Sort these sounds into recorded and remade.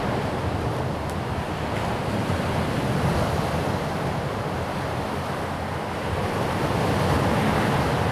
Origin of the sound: recorded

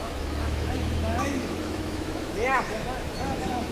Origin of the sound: remade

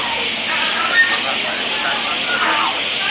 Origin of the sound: recorded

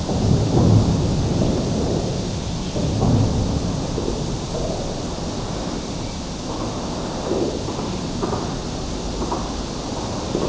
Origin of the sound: recorded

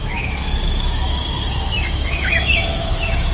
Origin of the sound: remade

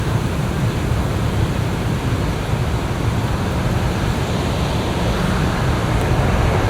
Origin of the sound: recorded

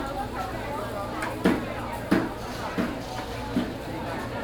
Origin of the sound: recorded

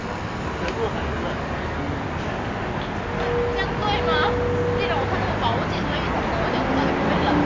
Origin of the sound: recorded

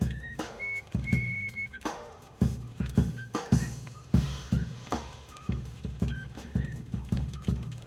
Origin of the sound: remade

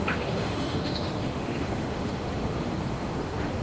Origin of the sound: remade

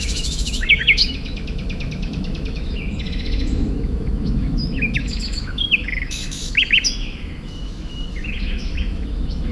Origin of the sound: remade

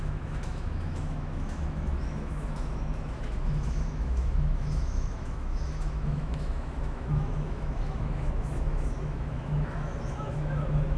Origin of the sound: remade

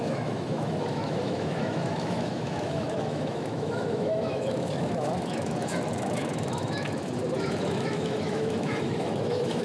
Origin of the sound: remade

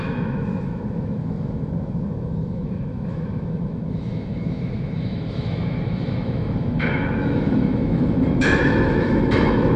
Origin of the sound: remade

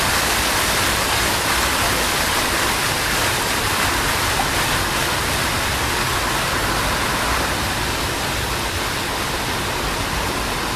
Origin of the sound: recorded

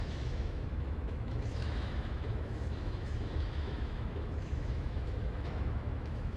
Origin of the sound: remade